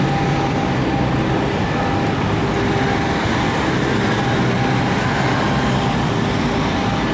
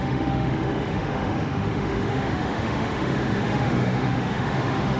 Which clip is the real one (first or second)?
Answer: first